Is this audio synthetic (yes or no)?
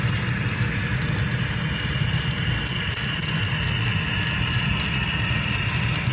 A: no